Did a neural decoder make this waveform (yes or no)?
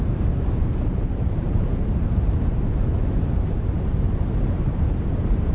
yes